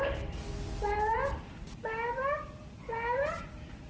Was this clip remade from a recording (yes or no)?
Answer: no